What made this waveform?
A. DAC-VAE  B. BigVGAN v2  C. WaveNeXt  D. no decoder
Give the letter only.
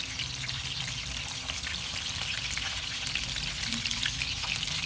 D